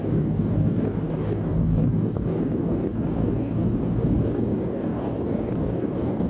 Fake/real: fake